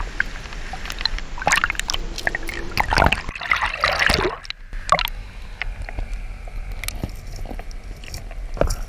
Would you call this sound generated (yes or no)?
no